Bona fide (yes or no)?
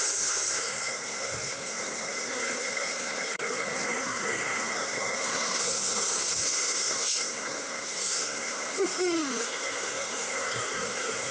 no